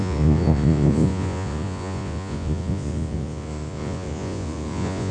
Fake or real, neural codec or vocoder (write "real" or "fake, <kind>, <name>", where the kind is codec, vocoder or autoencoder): fake, vocoder, Vocos